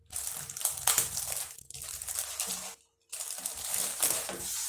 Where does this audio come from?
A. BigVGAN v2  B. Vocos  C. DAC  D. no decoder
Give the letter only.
A